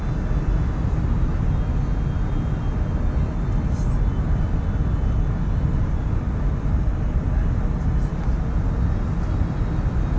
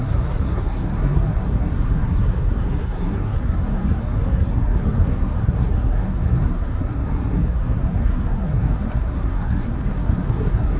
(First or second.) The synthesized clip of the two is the second